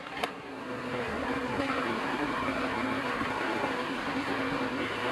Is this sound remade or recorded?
remade